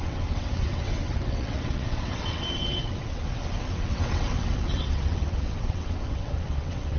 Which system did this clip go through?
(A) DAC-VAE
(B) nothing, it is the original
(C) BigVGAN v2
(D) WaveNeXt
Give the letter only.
D